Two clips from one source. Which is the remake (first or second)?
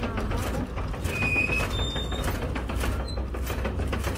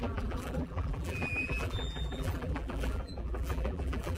second